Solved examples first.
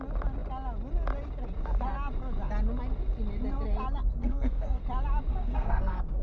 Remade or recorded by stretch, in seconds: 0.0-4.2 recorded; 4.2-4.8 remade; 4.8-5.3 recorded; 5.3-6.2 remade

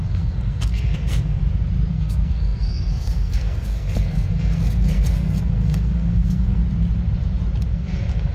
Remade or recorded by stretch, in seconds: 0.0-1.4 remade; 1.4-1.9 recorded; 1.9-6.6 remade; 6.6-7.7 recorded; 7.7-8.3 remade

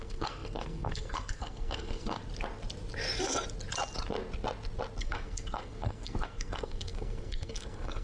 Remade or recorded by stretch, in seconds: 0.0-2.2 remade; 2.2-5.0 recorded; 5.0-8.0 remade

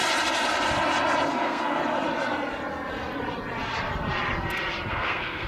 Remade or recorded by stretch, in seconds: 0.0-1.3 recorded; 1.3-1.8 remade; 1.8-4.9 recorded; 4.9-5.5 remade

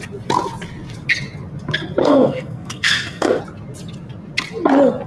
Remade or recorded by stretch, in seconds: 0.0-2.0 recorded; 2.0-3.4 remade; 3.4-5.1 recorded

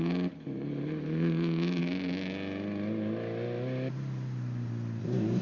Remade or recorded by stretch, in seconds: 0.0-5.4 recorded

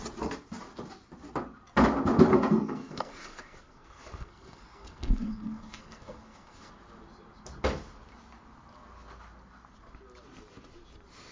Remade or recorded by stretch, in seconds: 0.0-2.3 recorded; 2.3-6.7 remade; 6.7-11.3 recorded